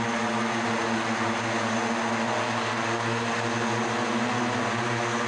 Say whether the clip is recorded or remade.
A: recorded